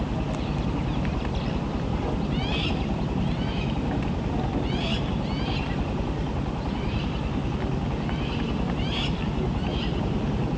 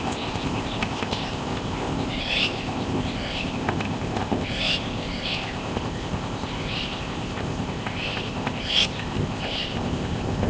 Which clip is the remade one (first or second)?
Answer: second